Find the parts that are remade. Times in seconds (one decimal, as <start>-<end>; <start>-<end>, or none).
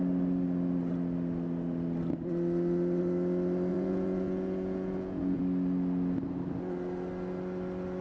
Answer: 3.7-5.4